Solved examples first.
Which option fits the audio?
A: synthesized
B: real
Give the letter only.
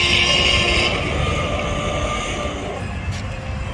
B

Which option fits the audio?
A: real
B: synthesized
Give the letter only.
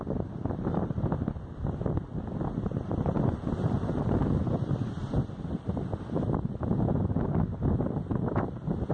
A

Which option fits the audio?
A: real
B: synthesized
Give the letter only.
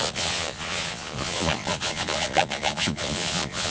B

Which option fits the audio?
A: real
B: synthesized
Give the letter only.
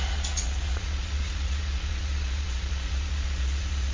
B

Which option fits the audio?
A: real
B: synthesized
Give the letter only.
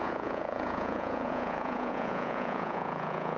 B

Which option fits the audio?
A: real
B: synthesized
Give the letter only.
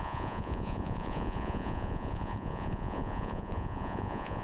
B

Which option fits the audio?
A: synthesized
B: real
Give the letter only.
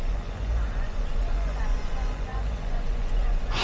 A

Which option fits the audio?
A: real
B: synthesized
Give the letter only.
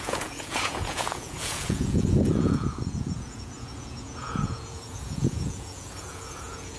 B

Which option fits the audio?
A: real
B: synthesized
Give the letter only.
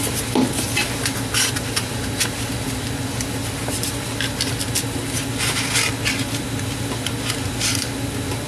A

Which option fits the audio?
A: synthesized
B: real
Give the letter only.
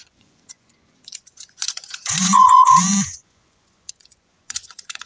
A